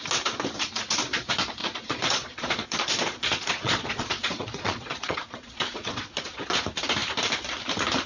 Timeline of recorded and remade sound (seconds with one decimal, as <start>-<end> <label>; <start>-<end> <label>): 0.0-1.6 recorded; 1.6-6.5 remade; 6.5-8.1 recorded